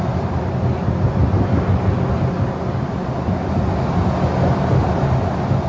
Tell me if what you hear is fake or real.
real